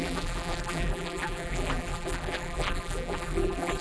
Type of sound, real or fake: fake